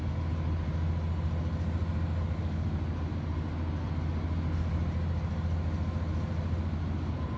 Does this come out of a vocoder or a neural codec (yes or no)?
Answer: no